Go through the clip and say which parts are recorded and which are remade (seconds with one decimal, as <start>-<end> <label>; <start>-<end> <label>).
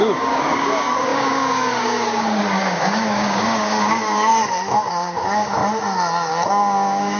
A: 0.0-4.3 remade; 4.3-4.9 recorded; 4.9-5.6 remade; 5.6-6.3 recorded; 6.3-7.2 remade